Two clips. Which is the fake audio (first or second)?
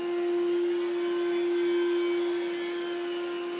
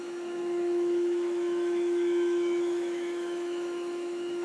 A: second